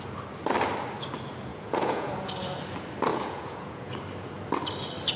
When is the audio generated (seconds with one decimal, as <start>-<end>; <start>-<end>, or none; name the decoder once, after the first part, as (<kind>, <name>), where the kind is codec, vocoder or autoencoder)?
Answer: 1.5-2.3 (vocoder, Vocos); 3.1-3.9